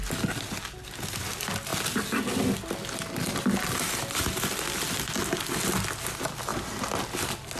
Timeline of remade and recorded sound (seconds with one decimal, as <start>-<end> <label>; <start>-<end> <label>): 0.0-7.6 recorded